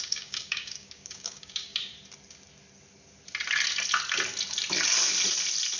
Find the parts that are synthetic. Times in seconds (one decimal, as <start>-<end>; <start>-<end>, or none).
0.0-1.9